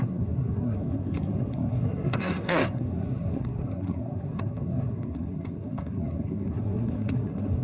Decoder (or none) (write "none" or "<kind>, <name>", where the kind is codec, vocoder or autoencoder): codec, SNAC